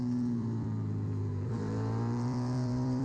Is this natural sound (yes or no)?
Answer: no